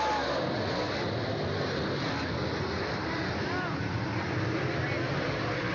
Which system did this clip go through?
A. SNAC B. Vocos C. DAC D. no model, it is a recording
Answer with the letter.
D